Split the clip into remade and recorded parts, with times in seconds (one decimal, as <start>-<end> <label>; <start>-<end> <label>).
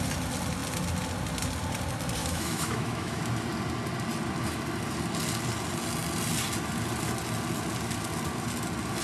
0.0-2.2 recorded; 2.2-3.2 remade; 3.2-9.0 recorded